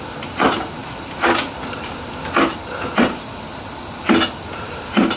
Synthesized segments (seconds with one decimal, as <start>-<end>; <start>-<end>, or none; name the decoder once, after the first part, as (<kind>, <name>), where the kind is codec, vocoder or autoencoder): none